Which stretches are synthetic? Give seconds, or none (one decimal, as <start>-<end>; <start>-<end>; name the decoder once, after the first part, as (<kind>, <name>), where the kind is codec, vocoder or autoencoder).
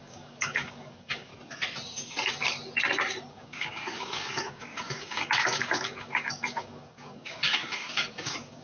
0.0-1.3 (codec, DAC); 3.3-8.6